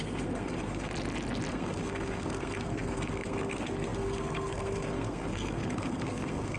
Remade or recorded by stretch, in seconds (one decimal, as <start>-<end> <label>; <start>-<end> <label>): 0.0-0.9 remade; 0.9-1.5 recorded; 1.5-6.6 remade